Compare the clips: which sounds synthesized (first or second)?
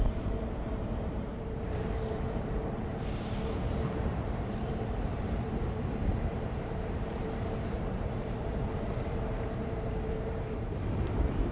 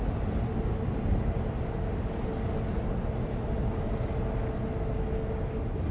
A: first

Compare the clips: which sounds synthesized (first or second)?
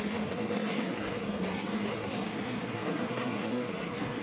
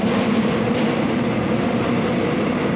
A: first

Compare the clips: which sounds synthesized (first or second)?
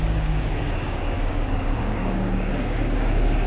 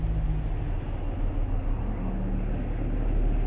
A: first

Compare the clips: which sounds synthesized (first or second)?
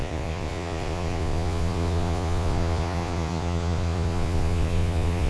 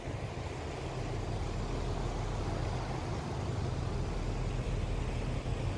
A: first